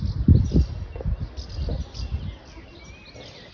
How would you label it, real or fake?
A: real